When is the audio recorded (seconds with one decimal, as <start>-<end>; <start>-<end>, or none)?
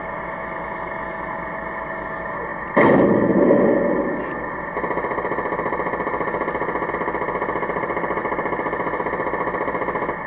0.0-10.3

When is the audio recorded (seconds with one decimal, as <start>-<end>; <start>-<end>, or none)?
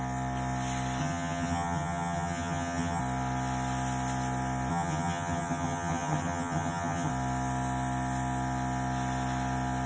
0.0-1.0; 3.0-4.7; 7.1-9.9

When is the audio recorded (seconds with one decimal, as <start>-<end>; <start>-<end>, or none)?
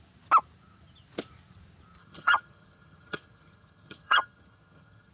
0.0-2.0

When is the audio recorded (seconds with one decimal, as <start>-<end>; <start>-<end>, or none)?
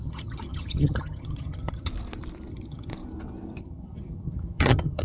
1.9-2.5; 2.9-3.6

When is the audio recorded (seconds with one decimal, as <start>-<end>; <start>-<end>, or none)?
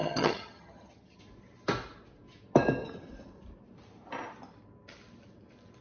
1.2-5.8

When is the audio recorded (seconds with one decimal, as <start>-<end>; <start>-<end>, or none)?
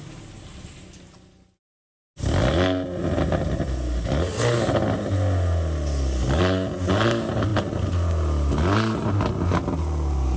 0.0-10.4